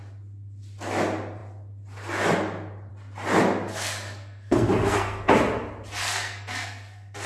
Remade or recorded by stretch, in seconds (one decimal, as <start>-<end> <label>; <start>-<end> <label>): 0.0-3.7 recorded; 3.7-5.3 remade; 5.3-6.0 recorded; 6.0-7.3 remade